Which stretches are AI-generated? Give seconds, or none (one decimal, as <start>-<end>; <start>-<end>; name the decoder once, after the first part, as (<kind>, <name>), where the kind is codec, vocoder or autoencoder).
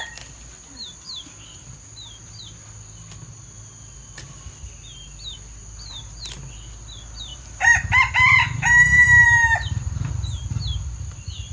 7.3-10.1 (vocoder, BigVGAN v2)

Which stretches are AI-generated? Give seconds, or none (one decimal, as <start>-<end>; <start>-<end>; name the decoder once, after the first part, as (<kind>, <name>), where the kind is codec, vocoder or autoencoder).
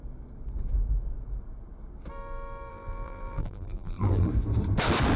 2.7-4.3 (vocoder, BigVGAN v2)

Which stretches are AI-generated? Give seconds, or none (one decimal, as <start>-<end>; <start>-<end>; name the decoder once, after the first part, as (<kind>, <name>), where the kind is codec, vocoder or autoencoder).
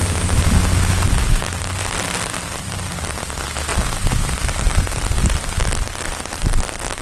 3.7-5.9 (vocoder, BigVGAN v2)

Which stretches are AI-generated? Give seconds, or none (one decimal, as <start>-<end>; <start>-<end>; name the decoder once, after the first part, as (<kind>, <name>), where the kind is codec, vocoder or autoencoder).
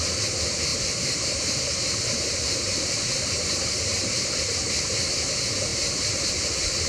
0.7-4.4 (vocoder, BigVGAN v2)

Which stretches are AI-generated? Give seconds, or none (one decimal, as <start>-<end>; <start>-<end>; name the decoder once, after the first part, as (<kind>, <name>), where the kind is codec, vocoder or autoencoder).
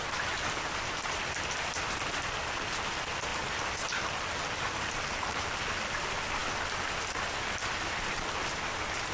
3.3-6.0 (vocoder, BigVGAN v2)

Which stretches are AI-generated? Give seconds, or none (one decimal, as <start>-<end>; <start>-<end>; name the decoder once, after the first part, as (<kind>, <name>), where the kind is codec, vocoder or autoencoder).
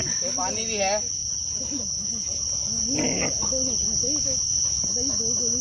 none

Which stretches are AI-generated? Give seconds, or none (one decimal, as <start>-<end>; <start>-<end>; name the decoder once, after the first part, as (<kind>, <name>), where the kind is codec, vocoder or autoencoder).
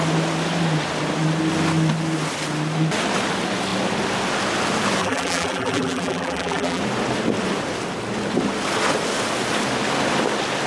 5.0-6.8 (vocoder, BigVGAN v2)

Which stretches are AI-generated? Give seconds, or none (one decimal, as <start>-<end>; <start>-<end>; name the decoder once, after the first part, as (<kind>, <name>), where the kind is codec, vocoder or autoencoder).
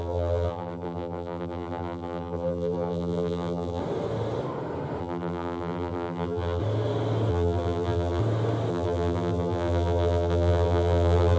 0.0-3.8 (vocoder, BigVGAN v2); 5.0-6.6; 7.3-8.2; 8.7-11.4